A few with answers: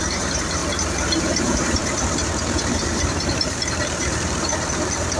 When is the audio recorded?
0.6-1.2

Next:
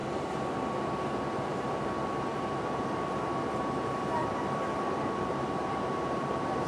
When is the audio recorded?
none

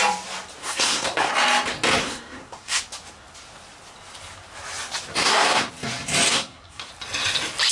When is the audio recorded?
0.0-0.6; 1.3-2.0; 2.8-5.2; 5.7-6.3; 6.9-7.7

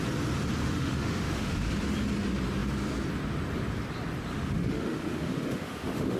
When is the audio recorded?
0.0-0.6; 1.7-4.3